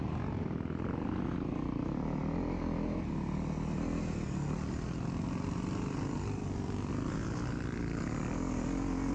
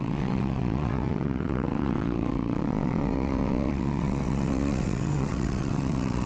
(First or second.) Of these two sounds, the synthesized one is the second